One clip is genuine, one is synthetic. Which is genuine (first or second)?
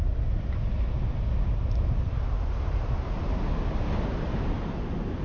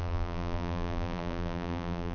first